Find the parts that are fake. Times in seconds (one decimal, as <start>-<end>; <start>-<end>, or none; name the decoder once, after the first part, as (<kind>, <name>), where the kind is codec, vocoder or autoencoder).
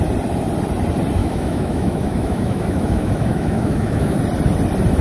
1.2-4.2 (autoencoder, DAC-VAE)